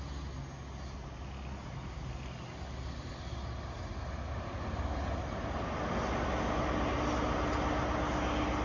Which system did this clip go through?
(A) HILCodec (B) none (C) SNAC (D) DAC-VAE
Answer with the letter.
B